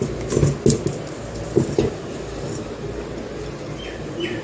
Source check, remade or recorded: recorded